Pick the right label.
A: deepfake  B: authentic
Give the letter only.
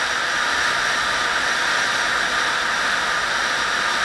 B